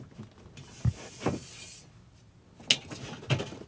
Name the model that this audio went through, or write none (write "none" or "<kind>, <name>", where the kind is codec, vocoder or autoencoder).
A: none